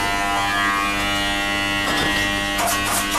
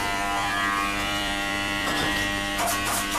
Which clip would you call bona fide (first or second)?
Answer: first